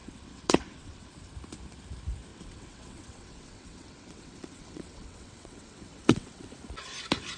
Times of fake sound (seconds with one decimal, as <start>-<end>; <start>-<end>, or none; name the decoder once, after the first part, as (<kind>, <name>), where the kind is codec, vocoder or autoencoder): 0.0-1.1 (vocoder, WaveNeXt); 2.3-6.5